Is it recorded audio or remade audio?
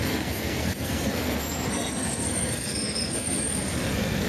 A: remade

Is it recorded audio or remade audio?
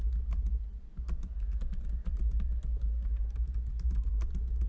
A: recorded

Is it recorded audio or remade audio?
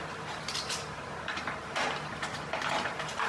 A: remade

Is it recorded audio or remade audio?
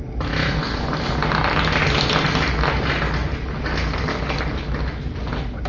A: recorded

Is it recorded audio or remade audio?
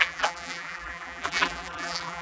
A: remade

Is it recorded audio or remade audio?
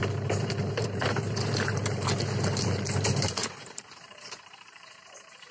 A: remade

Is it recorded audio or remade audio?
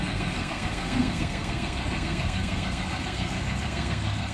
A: remade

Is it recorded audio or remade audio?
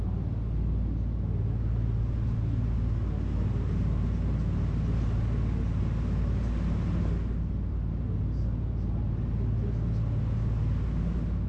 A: recorded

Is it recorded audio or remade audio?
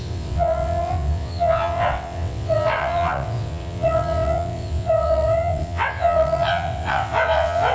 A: remade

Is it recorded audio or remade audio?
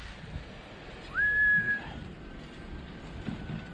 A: recorded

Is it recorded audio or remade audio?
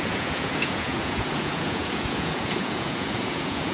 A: remade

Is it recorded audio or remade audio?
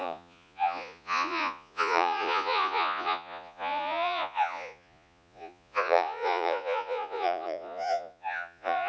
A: remade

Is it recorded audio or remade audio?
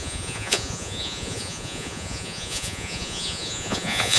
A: remade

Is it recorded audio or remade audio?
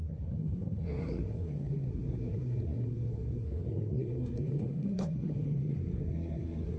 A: remade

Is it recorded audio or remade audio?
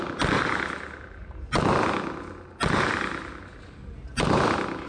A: recorded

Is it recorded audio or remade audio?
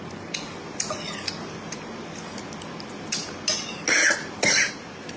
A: recorded